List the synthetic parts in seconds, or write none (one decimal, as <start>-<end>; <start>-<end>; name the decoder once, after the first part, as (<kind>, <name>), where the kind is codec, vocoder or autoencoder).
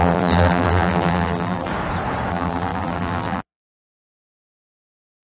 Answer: 0.0-1.7 (vocoder, BigVGAN v2); 2.3-5.2